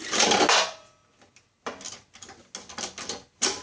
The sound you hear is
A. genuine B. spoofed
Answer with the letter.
A